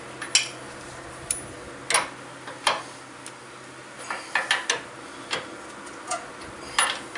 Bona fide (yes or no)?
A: yes